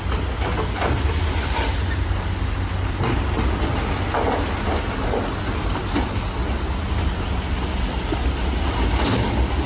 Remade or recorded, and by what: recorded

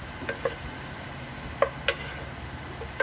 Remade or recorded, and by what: recorded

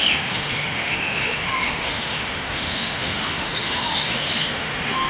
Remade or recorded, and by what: remade, autoencoder, DAC-VAE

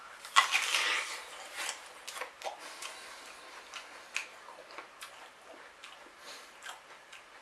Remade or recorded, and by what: recorded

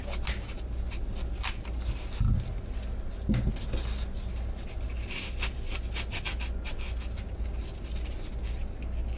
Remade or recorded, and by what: recorded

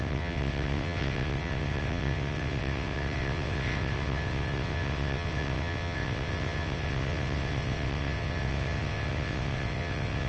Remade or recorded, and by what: remade, vocoder, WaveNeXt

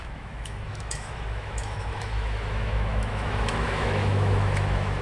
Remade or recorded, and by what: remade, autoencoder, DAC-VAE